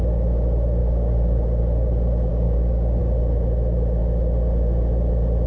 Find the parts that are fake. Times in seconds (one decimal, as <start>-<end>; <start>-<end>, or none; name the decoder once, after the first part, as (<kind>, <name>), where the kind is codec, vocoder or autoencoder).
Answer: 0.8-1.6 (codec, DAC); 2.3-3.0